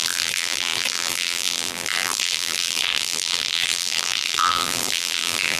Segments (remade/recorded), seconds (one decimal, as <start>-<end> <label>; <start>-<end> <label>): 0.0-5.6 remade